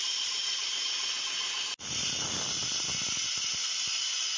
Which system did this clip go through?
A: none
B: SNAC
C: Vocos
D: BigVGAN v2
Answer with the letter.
A